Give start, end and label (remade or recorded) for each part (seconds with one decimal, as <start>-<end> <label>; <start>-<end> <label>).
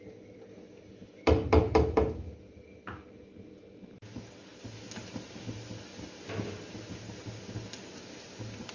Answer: 0.0-8.7 recorded